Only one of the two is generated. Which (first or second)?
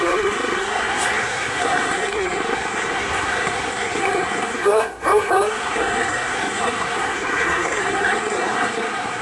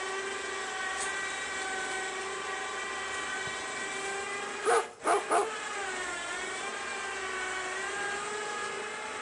first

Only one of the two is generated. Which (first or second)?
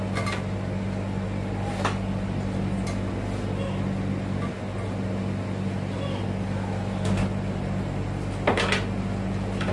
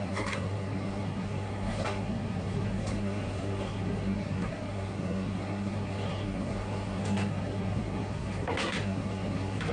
second